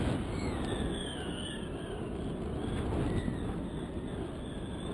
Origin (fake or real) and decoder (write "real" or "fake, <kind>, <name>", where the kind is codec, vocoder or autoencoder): real